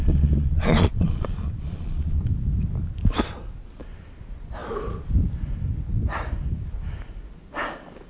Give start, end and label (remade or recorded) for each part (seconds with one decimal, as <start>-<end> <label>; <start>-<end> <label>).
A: 0.0-2.2 remade; 2.2-8.1 recorded